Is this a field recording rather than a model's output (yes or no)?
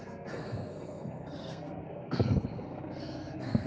no